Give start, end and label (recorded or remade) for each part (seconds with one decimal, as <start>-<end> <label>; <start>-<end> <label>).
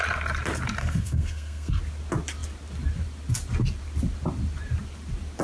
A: 0.0-0.8 recorded; 0.8-1.8 remade; 1.8-5.4 recorded